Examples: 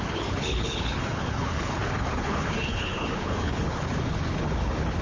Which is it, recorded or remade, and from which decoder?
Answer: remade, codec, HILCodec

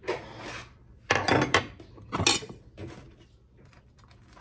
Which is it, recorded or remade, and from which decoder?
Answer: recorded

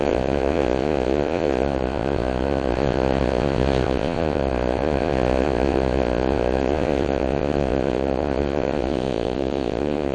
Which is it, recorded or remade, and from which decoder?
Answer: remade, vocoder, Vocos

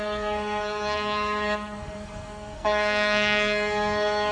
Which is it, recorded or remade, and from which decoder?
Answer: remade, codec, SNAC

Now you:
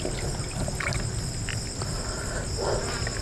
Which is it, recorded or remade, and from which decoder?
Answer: recorded